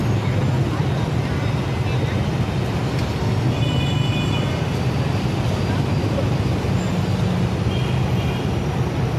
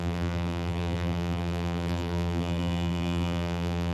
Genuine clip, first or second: first